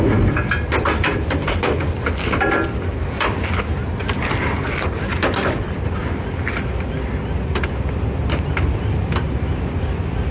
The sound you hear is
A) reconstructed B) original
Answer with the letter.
B